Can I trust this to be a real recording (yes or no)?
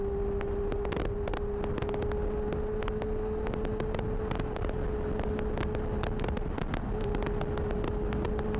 yes